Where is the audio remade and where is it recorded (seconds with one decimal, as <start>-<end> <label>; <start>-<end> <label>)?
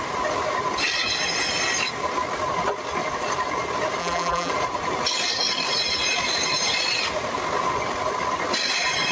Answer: 0.0-4.0 recorded; 4.0-4.5 remade; 4.5-9.1 recorded